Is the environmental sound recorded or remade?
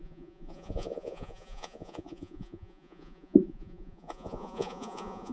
remade